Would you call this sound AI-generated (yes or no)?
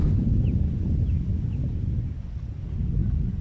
no